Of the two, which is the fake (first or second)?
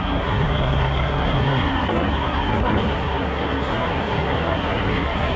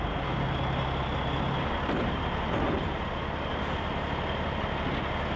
first